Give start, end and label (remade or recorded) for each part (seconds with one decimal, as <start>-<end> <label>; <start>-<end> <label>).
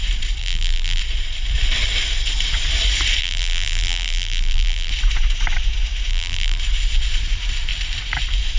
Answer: 0.0-0.4 recorded; 0.4-1.0 remade; 1.0-3.2 recorded; 3.2-4.9 remade; 4.9-6.1 recorded; 6.1-6.6 remade; 6.6-8.6 recorded